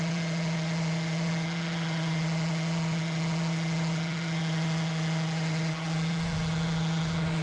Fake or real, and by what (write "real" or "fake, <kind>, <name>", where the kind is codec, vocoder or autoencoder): real